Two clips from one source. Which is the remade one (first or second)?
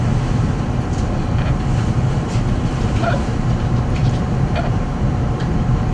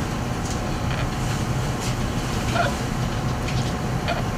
first